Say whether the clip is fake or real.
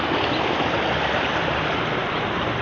real